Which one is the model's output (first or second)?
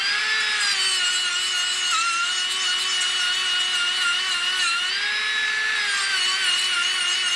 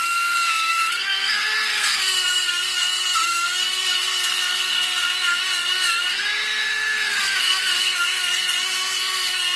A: second